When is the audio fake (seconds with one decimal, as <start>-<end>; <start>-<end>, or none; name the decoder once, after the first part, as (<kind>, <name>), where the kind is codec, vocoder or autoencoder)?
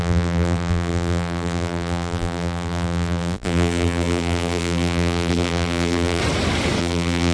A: 0.0-6.2 (vocoder, BigVGAN v2); 6.8-7.3